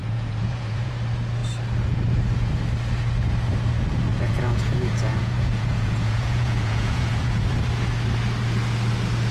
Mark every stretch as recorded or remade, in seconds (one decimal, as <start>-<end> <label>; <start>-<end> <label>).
0.0-0.9 remade; 0.9-4.1 recorded; 4.1-7.5 remade; 7.5-9.3 recorded